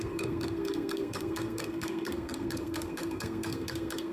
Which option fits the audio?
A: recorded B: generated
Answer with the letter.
B